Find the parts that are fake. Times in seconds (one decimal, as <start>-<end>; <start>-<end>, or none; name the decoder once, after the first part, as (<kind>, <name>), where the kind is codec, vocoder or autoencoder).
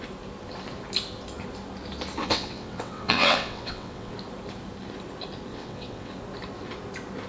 2.2-4.1 (vocoder, WaveNeXt); 5.5-6.1